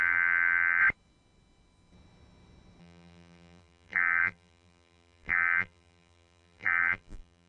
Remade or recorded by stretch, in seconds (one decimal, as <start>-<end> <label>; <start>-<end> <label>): 0.0-0.8 remade; 0.8-2.8 recorded; 2.8-7.5 remade